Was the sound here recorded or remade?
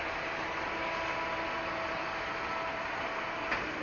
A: recorded